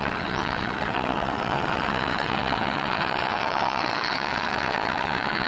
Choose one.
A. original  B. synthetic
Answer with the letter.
B